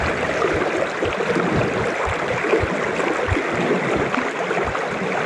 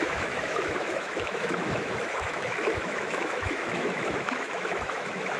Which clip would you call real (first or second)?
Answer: first